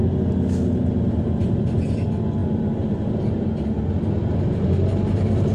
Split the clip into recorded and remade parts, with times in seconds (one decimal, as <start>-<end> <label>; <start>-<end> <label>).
0.0-5.5 recorded